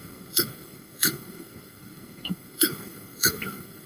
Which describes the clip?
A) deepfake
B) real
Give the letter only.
A